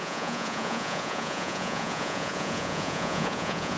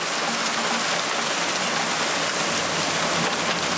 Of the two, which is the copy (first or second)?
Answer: first